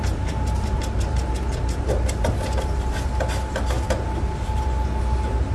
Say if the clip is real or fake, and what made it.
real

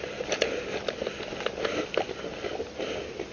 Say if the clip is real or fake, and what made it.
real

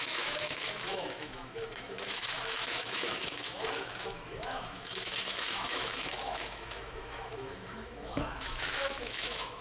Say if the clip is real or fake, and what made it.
fake, autoencoder, DAC-VAE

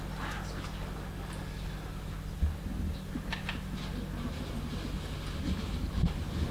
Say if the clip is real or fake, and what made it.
real